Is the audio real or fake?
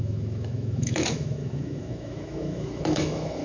fake